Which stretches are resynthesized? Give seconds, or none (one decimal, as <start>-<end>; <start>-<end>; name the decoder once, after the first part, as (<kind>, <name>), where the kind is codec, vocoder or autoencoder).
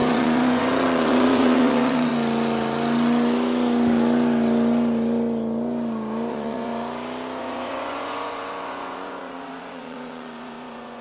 0.0-2.1 (vocoder, Vocos); 6.3-6.7; 7.4-11.0